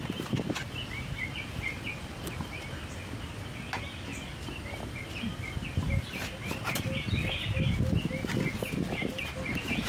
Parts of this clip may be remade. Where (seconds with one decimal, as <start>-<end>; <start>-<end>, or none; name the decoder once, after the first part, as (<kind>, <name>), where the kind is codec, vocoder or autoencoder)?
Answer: 4.1-6.4 (vocoder, BigVGAN v2)